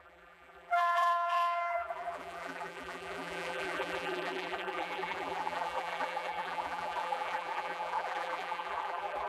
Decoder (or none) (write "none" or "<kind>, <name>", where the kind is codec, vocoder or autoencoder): vocoder, BigVGAN v2